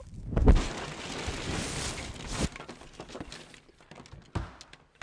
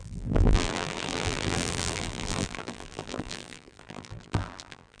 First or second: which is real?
first